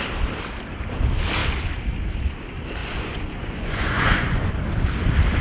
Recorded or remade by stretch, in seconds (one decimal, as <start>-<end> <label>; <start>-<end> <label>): 0.0-2.8 recorded; 2.8-4.5 remade; 4.5-5.4 recorded